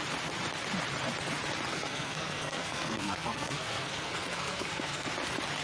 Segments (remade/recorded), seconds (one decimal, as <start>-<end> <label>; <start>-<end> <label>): 0.0-1.7 recorded; 1.7-5.1 remade; 5.1-5.6 recorded